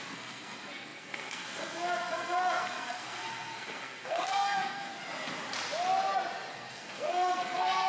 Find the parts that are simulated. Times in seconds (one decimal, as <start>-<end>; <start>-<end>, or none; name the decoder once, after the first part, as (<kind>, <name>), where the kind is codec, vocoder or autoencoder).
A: 0.0-4.9 (codec, SNAC); 6.5-7.9